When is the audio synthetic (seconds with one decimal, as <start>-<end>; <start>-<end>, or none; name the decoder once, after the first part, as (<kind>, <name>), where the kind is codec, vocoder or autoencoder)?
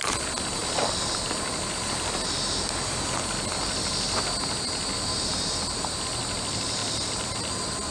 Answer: 0.6-2.2 (vocoder, BigVGAN v2); 6.8-7.9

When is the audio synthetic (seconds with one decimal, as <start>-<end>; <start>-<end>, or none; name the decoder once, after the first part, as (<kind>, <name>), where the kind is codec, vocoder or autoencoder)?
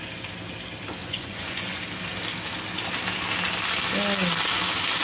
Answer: 1.0-1.8 (vocoder, Vocos)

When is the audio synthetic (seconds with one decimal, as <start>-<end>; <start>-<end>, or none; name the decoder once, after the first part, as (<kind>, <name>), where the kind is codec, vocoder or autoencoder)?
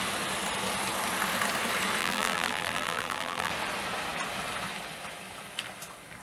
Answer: 2.0-3.5 (vocoder, BigVGAN v2)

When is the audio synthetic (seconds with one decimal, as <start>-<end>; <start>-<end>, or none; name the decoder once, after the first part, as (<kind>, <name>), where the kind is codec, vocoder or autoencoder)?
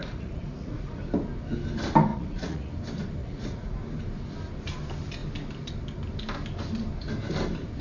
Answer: 0.0-1.0 (vocoder, Vocos); 2.1-2.7; 3.2-3.8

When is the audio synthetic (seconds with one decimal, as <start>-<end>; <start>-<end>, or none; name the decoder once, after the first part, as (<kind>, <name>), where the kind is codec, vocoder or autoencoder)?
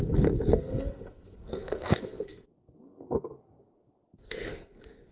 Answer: 0.0-5.1 (codec, SNAC)